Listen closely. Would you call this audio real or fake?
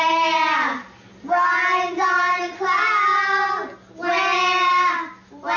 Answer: real